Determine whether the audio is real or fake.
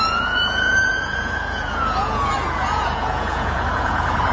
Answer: fake